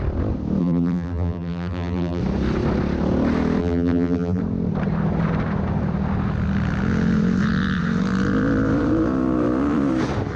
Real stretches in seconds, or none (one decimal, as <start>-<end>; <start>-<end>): 0.0-0.6; 2.2-3.6; 4.4-10.4